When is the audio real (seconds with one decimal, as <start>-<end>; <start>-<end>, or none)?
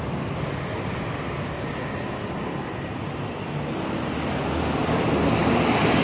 0.0-6.0